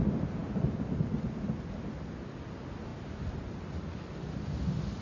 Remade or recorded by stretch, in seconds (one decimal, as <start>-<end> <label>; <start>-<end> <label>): 0.0-5.0 recorded